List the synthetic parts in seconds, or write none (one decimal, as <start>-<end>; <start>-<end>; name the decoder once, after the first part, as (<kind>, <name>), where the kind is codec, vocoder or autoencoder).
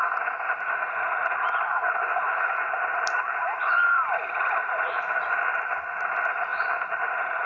1.2-5.7 (vocoder, BigVGAN v2); 6.5-7.5